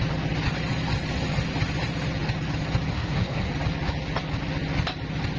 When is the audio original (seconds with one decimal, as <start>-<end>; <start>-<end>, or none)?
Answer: 0.0-2.9; 3.5-5.4